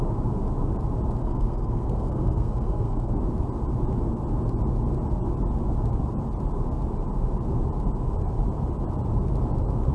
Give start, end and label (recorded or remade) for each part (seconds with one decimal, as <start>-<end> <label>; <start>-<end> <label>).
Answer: 0.0-1.2 recorded; 1.2-3.1 remade; 3.1-9.9 recorded